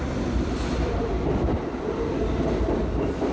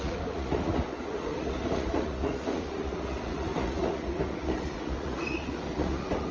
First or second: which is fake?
second